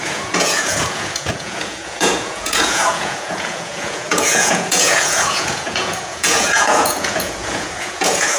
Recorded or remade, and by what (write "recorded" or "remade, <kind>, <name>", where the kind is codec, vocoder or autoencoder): remade, vocoder, Vocos